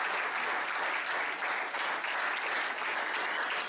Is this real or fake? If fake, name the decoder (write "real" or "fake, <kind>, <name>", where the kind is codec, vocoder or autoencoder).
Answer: real